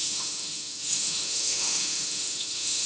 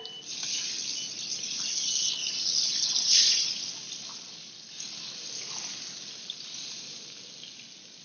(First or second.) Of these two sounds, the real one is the second